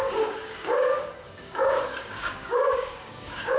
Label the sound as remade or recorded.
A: remade